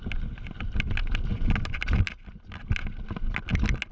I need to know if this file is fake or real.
real